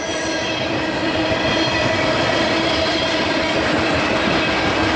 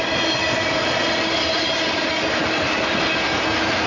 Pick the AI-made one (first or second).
first